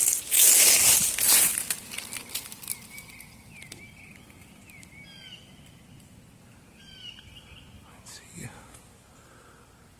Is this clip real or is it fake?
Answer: real